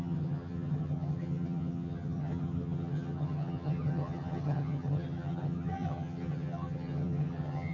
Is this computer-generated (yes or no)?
yes